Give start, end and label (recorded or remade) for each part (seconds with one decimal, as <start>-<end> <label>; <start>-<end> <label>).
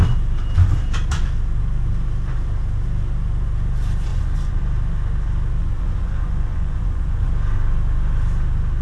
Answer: 0.0-4.1 recorded; 4.1-4.6 remade; 4.6-5.6 recorded; 5.6-7.3 remade; 7.3-8.8 recorded